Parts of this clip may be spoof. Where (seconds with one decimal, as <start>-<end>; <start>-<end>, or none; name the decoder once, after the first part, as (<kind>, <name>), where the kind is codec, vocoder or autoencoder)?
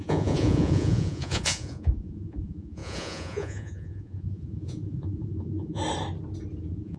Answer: 0.0-5.8 (vocoder, Vocos); 6.6-7.0